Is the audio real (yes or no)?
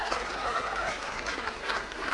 no